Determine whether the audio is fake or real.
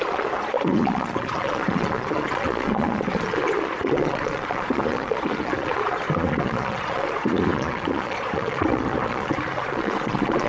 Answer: fake